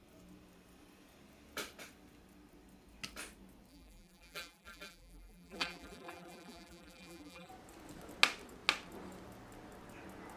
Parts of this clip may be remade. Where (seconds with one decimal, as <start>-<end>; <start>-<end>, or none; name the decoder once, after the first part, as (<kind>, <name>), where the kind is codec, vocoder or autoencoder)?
3.7-7.5 (vocoder, BigVGAN v2)